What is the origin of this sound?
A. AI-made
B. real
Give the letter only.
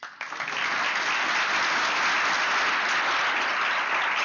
B